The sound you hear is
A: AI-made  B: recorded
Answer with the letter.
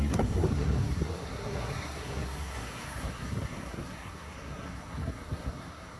A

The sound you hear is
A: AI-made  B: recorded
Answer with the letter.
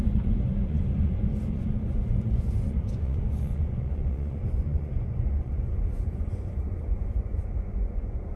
A